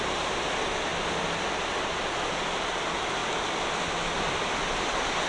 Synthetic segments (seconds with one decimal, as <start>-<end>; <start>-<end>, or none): none